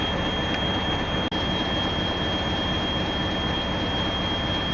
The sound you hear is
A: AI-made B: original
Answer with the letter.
B